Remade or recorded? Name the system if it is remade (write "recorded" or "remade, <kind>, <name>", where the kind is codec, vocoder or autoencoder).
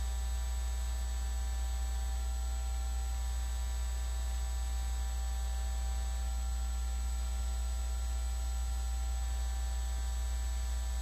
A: recorded